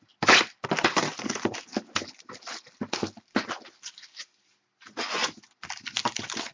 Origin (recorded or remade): recorded